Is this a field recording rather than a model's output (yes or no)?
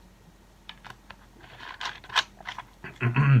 yes